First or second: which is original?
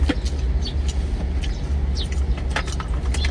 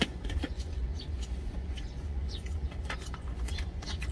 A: first